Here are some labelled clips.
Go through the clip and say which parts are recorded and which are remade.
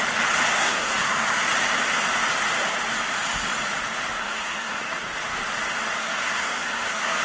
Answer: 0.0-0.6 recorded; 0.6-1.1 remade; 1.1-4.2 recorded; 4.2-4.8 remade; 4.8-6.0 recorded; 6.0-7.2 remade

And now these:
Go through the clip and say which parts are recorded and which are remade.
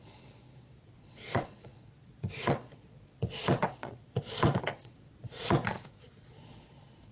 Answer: 0.0-7.1 remade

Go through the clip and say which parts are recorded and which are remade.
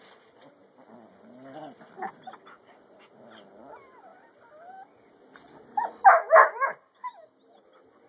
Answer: 0.0-8.1 recorded